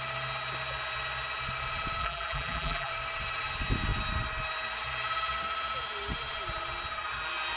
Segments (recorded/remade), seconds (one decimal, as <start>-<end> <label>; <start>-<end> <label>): 0.0-2.0 recorded; 2.0-2.9 remade; 2.9-7.6 recorded